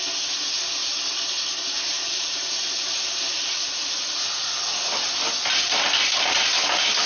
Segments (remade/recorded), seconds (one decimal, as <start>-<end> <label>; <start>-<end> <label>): 0.0-1.9 recorded; 1.9-4.4 remade; 4.4-7.1 recorded